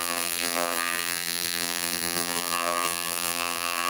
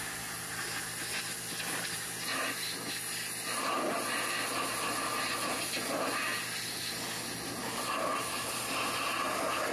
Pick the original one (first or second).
second